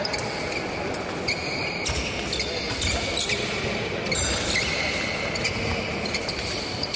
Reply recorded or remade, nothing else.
recorded